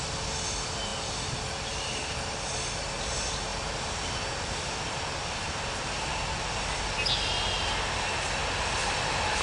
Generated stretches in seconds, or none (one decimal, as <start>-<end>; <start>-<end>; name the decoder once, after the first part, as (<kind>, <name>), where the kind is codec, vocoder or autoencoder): 3.5-5.8 (vocoder, BigVGAN v2)